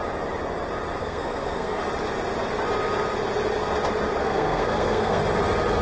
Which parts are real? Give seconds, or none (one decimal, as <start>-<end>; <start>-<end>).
0.0-1.0; 1.8-4.2; 5.2-5.8